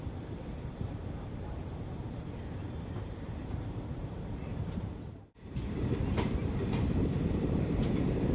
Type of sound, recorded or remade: remade